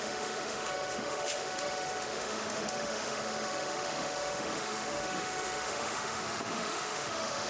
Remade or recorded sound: remade